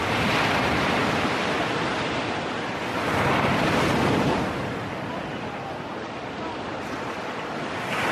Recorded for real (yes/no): yes